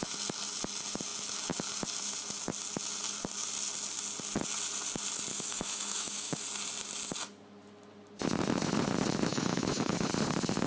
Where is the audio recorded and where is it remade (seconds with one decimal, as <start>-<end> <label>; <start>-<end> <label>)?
0.0-5.3 recorded; 5.3-6.4 remade; 6.4-9.3 recorded; 9.3-10.1 remade; 10.1-10.7 recorded